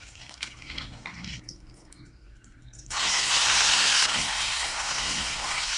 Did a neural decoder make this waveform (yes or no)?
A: yes